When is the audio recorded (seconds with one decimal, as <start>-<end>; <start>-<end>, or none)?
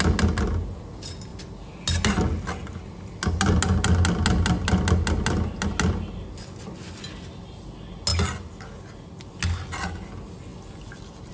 0.0-11.3